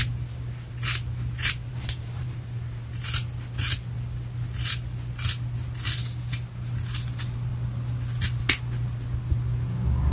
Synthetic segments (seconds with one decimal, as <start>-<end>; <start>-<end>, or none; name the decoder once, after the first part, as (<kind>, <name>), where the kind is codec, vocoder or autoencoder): 1.7-3.0 (vocoder, BigVGAN v2)

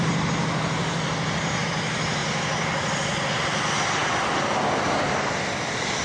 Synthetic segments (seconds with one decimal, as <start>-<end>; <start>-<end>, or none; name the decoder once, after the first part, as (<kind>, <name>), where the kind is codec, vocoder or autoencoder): 2.2-3.3 (vocoder, BigVGAN v2)

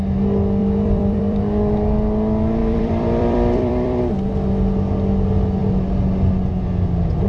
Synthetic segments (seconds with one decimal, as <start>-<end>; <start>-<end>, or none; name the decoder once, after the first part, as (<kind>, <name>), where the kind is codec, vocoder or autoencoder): 0.6-1.4 (vocoder, BigVGAN v2); 2.6-4.0

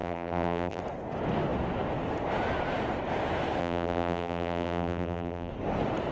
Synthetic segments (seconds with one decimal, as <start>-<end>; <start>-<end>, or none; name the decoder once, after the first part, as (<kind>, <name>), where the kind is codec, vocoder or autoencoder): 0.0-0.8 (vocoder, BigVGAN v2); 3.6-5.5

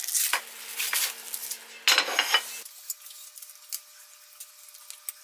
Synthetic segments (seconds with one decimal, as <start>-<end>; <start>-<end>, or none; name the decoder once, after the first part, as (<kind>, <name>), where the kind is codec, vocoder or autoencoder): none

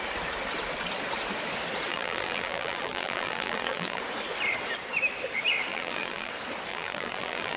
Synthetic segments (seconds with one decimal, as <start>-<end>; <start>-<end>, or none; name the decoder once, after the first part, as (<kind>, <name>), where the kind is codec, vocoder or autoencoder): 1.9-4.0 (vocoder, BigVGAN v2); 5.7-6.3; 6.7-7.6